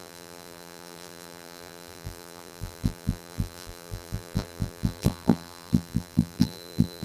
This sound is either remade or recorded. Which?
remade